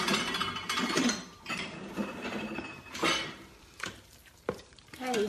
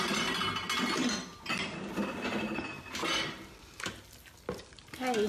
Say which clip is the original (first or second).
second